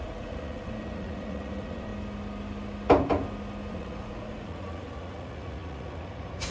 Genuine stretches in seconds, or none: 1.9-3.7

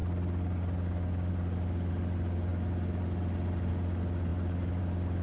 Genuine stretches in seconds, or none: 0.0-5.2

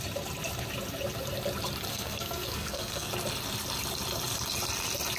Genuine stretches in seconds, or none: 0.0-1.9; 3.1-5.2

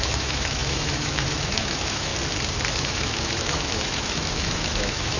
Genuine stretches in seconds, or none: 2.1-2.7

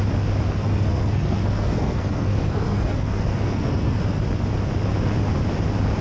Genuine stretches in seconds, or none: 0.0-0.6; 4.2-6.0

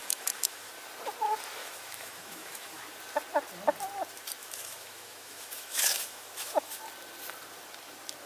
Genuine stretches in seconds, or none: 0.7-1.6; 2.8-4.4; 6.8-8.3

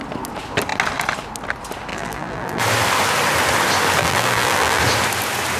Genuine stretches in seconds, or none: 0.0-1.9; 2.6-4.0; 4.8-5.6

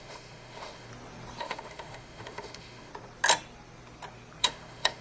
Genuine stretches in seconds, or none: 0.9-1.4; 2.9-4.4